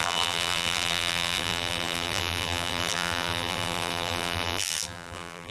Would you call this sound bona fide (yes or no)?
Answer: no